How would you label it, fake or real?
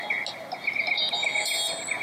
real